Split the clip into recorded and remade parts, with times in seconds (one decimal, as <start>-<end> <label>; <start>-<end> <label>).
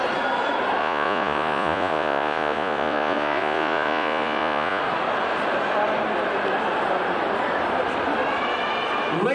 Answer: 0.0-0.8 recorded; 0.8-4.8 remade; 4.8-9.3 recorded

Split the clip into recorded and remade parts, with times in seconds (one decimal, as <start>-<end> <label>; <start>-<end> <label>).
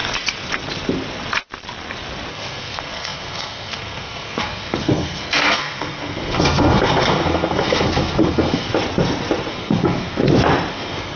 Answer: 0.0-2.3 recorded; 2.3-8.7 remade; 8.7-9.5 recorded; 9.5-10.2 remade; 10.2-10.7 recorded; 10.7-11.2 remade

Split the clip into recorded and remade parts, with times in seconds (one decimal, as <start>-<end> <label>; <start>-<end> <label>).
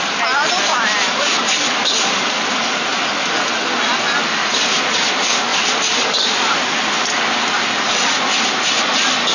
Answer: 0.0-4.4 recorded; 4.4-5.1 remade; 5.1-9.3 recorded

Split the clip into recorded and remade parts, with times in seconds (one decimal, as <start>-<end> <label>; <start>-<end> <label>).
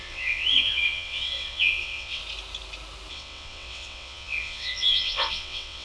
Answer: 0.0-2.2 remade; 2.2-3.1 recorded; 3.1-5.8 remade